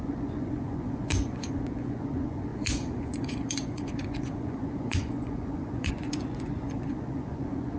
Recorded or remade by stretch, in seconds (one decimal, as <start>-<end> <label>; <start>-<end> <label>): 0.0-7.8 remade